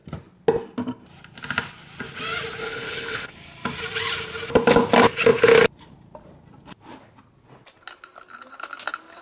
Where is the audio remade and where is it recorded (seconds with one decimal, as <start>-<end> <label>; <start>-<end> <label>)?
0.0-2.6 recorded; 2.6-3.3 remade; 3.3-9.2 recorded